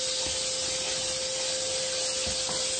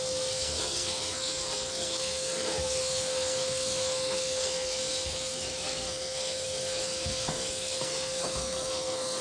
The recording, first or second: first